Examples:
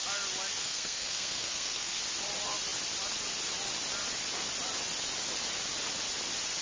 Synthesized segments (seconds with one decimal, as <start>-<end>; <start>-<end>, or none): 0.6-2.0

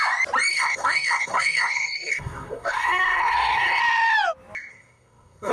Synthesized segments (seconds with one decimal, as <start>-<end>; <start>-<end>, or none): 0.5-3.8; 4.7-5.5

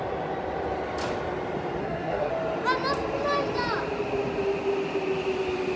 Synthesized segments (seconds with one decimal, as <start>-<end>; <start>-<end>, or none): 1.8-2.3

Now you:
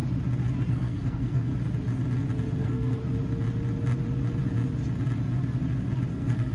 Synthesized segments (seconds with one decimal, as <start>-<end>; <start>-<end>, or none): 0.7-1.5; 2.6-3.0; 6.1-6.5

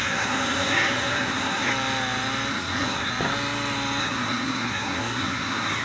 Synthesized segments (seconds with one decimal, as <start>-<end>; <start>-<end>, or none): 0.0-1.7; 2.5-3.1; 4.0-5.8

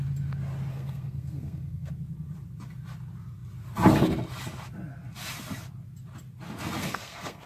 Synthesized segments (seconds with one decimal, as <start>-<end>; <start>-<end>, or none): 0.7-1.9; 6.8-7.5